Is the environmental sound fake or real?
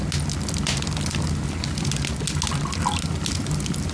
real